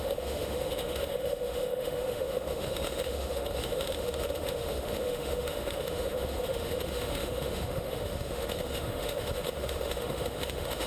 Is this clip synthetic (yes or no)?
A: yes